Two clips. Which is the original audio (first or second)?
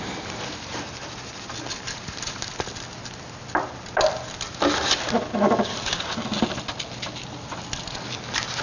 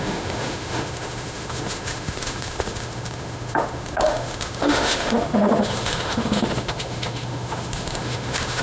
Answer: first